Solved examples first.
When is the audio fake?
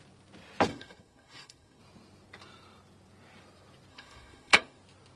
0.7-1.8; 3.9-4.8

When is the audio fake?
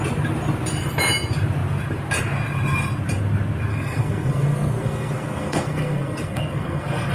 3.7-7.1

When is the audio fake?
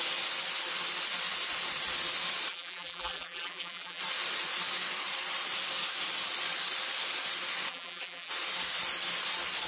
2.5-4.0; 7.7-8.3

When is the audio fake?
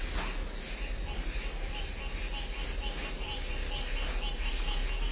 none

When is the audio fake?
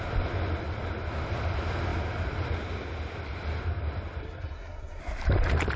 4.2-5.0